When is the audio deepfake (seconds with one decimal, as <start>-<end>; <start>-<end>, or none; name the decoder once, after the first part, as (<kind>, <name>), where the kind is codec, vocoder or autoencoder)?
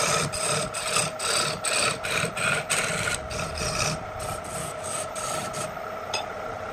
4.6-5.1 (codec, DAC)